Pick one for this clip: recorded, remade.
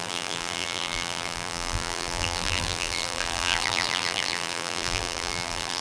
remade